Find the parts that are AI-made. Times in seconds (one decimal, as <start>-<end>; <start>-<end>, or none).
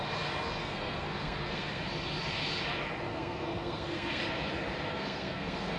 0.6-1.8; 3.1-4.2; 4.9-5.8